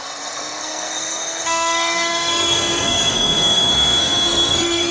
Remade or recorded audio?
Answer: remade